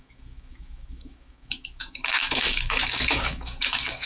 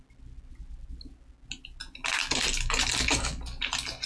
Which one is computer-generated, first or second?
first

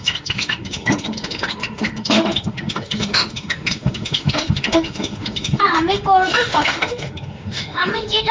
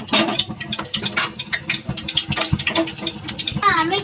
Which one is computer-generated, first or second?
first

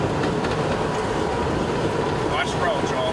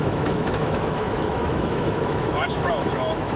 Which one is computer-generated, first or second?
second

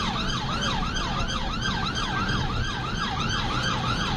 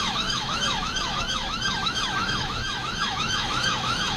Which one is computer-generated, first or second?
second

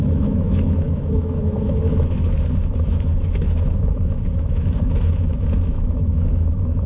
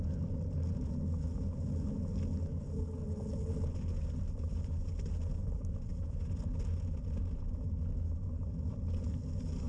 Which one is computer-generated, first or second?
first